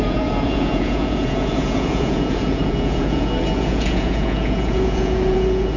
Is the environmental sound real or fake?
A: fake